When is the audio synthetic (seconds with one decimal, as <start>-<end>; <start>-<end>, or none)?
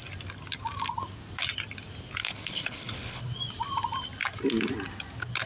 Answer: 2.2-3.2